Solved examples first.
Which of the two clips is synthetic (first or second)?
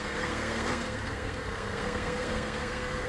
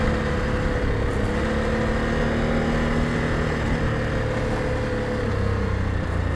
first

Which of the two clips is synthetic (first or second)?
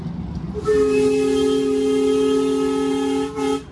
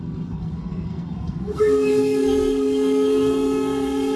second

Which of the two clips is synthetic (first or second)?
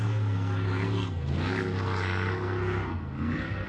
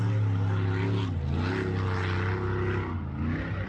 first